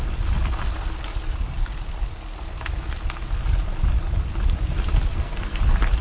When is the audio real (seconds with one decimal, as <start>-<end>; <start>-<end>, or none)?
0.0-5.1; 5.6-6.0